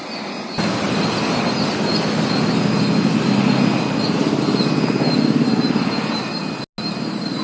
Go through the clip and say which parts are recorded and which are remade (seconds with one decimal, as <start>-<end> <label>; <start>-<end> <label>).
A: 0.0-7.4 recorded